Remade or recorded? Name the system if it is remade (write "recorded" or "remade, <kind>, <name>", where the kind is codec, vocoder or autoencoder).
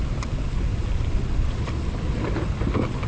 recorded